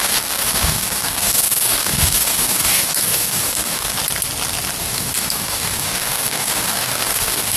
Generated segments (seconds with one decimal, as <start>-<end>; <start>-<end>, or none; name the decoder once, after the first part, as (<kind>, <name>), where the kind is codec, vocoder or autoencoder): 0.0-4.0 (codec, DAC); 4.8-7.6